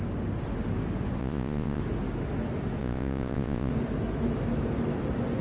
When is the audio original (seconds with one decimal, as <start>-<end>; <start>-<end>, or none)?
0.0-1.2; 1.8-2.8; 3.7-5.4